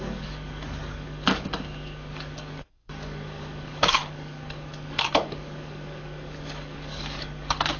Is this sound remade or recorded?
remade